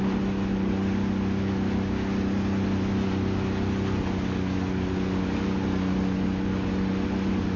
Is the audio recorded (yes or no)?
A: yes